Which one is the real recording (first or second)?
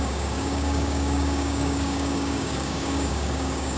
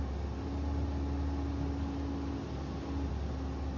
second